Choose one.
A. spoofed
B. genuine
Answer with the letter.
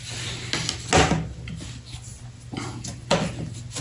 B